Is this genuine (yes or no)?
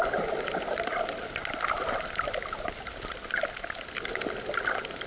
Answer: yes